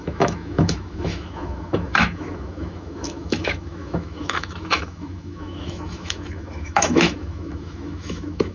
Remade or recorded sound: remade